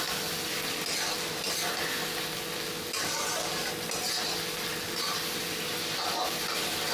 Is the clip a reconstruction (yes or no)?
no